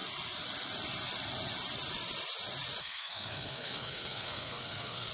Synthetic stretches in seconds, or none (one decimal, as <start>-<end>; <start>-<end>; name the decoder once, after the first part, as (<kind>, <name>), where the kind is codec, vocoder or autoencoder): 2.8-5.1 (codec, SNAC)